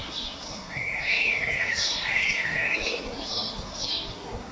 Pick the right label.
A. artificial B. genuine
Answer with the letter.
A